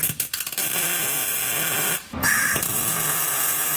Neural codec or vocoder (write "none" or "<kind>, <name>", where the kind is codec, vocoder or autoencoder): none